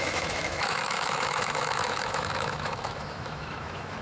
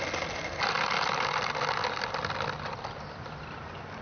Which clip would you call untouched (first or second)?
second